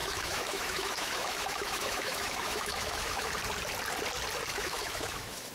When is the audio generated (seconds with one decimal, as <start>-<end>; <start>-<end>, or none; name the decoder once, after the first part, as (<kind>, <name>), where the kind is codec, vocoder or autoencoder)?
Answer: 0.0-3.3 (autoencoder, DAC-VAE); 4.5-5.5